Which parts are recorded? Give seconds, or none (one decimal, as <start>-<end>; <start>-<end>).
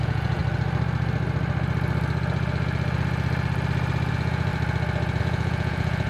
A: 0.4-4.1; 4.5-5.2